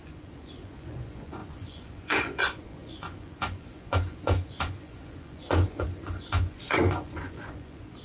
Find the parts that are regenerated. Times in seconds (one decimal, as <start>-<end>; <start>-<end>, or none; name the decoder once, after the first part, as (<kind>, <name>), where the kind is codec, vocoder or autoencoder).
0.0-8.0 (vocoder, Vocos)